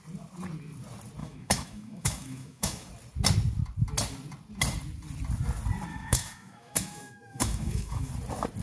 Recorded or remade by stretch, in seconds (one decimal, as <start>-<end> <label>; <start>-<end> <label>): 0.0-1.2 recorded; 1.2-2.9 remade; 2.9-5.9 recorded; 5.9-8.1 remade; 8.1-8.6 recorded